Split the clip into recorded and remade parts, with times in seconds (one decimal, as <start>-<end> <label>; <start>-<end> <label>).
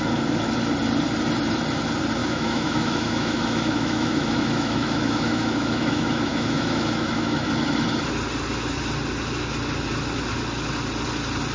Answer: 0.0-2.2 recorded; 2.2-7.5 remade; 7.5-11.5 recorded